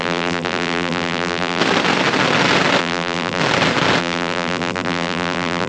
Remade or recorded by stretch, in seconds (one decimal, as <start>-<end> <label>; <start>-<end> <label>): 0.0-1.6 remade; 1.6-2.8 recorded; 2.8-3.4 remade; 3.4-4.0 recorded; 4.0-5.7 remade